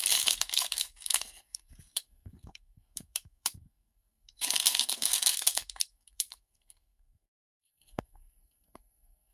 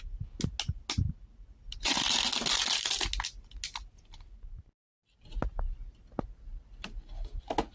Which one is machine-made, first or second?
first